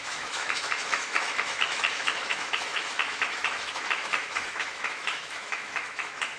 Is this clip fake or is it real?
fake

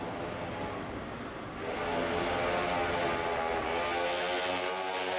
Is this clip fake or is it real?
real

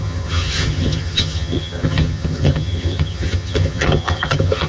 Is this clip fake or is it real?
fake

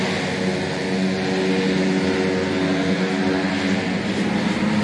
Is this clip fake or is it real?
real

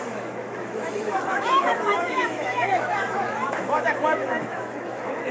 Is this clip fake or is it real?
fake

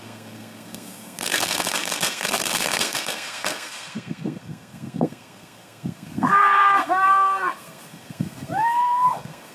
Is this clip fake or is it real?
fake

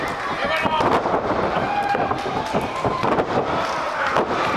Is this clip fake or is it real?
real